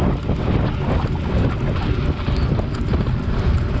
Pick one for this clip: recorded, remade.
recorded